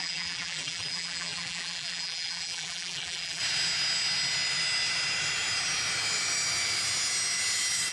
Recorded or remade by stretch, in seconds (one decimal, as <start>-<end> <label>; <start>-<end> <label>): 0.0-3.4 remade; 3.4-7.9 recorded